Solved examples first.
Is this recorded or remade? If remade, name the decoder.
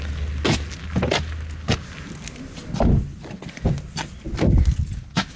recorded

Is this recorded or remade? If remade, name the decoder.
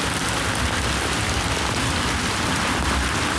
recorded